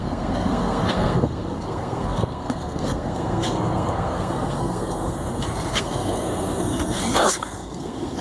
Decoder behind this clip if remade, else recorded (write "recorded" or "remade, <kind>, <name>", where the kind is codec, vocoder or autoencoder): remade, codec, SNAC